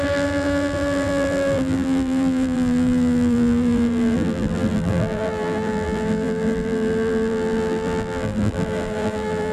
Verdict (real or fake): fake